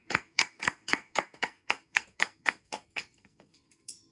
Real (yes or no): no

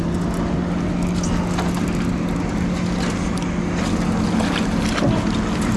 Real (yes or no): yes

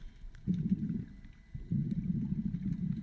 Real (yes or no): yes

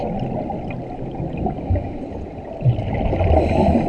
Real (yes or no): yes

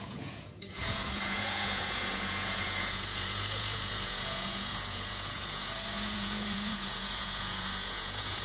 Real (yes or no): no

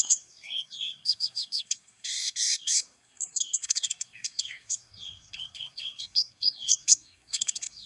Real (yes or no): no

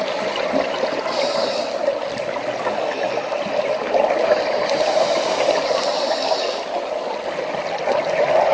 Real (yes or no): yes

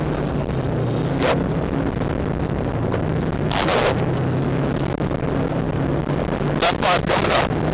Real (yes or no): yes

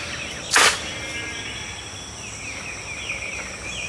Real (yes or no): yes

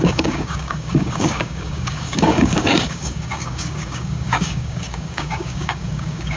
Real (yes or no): no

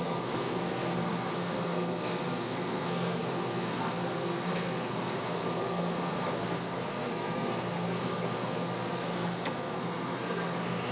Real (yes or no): no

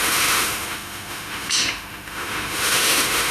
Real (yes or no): no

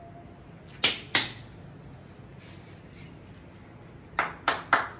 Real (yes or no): yes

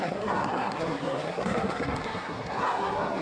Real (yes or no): no